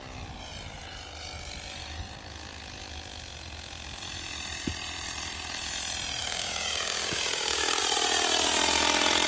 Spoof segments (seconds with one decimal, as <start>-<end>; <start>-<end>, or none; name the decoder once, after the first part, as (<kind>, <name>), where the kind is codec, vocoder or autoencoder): 6.2-7.8 (codec, DAC)